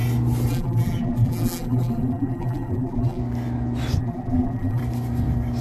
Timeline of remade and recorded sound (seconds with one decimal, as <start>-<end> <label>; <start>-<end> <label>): 0.0-0.5 recorded; 0.5-3.2 remade; 3.2-4.0 recorded; 4.0-4.8 remade; 4.8-5.6 recorded